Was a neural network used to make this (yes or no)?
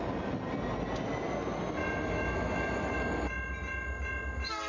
no